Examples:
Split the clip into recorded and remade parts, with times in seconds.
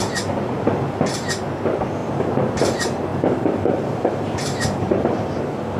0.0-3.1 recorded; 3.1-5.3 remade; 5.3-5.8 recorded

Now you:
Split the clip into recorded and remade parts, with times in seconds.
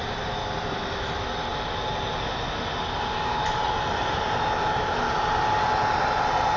0.0-6.6 recorded